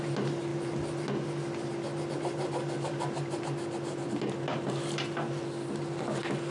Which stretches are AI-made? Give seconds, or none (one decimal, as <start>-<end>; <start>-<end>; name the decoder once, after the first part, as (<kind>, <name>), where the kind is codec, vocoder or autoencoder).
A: none